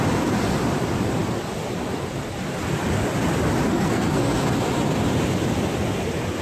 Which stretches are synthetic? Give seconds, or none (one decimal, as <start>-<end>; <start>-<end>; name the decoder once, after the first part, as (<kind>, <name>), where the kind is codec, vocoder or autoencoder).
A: 3.7-4.4 (codec, SNAC)

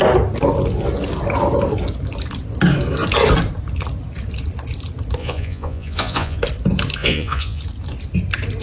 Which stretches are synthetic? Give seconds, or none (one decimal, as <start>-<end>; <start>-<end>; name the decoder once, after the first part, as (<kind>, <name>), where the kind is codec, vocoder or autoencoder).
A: 5.2-6.4 (vocoder, Vocos); 7.0-7.6

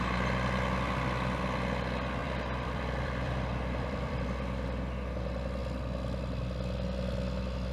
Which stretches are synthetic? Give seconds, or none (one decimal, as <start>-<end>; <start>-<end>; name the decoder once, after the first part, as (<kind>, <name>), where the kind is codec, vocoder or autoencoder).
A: 2.2-4.2 (vocoder, BigVGAN v2)

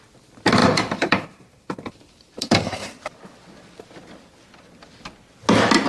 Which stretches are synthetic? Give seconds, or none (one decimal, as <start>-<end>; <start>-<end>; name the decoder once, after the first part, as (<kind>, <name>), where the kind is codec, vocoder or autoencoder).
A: 0.6-3.0 (vocoder, BigVGAN v2)

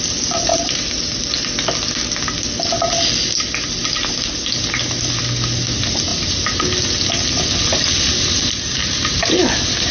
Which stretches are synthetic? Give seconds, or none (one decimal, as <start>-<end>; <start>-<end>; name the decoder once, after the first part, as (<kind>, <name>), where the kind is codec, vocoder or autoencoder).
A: 0.5-1.3 (vocoder, BigVGAN v2); 6.1-6.6; 8.8-9.3

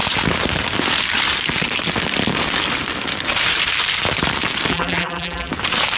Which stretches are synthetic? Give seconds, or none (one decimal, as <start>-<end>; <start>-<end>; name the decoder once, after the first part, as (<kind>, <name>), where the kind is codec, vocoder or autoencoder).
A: 4.7-5.5 (vocoder, BigVGAN v2)

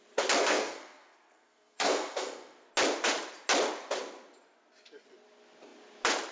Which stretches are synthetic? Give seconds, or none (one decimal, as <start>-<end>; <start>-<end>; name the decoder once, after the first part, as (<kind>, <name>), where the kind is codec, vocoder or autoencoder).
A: 0.4-2.7 (codec, SNAC)

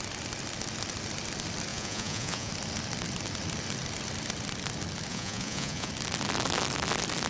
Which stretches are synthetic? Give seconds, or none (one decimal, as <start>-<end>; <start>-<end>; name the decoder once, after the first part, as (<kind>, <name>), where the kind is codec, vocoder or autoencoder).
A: 1.7-2.5 (vocoder, Vocos); 5.1-5.9